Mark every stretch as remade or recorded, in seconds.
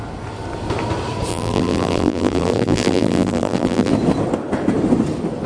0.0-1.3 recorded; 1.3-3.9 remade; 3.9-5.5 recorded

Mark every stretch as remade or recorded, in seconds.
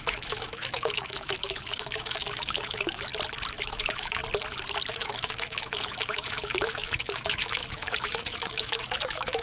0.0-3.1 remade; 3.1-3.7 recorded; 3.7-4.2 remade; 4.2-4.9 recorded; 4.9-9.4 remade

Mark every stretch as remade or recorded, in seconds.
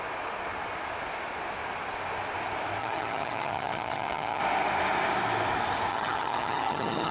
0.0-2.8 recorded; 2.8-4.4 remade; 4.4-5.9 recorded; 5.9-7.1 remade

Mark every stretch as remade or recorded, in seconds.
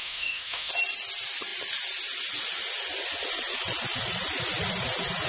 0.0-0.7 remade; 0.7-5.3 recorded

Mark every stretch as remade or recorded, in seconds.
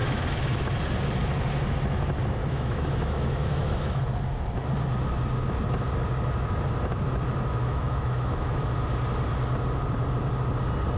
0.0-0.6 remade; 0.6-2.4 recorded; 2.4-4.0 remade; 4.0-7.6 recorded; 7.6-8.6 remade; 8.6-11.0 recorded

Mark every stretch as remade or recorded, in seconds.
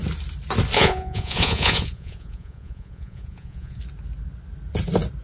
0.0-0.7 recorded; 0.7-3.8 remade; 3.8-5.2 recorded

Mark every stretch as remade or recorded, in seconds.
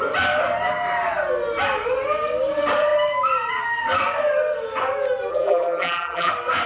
0.0-5.3 recorded; 5.3-6.3 remade; 6.3-6.7 recorded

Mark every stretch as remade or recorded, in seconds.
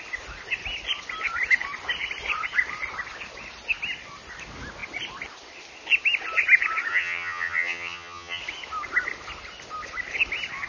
0.0-6.9 recorded; 6.9-8.4 remade; 8.4-10.7 recorded